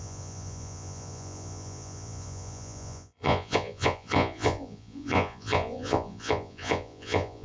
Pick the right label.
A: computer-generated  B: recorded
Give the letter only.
A